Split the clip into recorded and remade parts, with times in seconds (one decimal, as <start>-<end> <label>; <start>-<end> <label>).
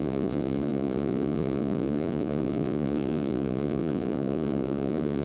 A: 0.0-5.2 remade